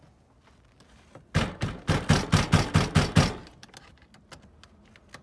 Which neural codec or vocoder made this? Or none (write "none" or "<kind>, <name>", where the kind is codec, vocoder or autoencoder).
none